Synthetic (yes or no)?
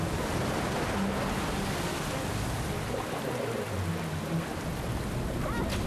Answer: no